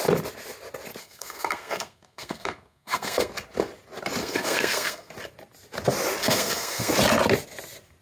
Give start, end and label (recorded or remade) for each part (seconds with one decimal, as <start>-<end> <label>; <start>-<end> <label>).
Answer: 0.0-1.0 recorded; 1.0-3.3 remade; 3.3-4.2 recorded; 4.2-5.1 remade; 5.1-6.2 recorded; 6.2-6.9 remade; 6.9-8.0 recorded